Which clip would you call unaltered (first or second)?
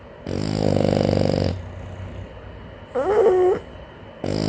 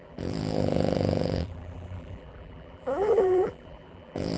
first